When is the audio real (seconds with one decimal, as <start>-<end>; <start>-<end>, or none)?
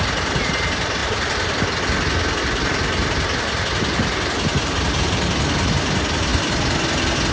0.0-1.0; 1.8-7.3